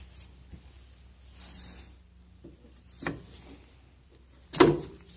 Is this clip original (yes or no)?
yes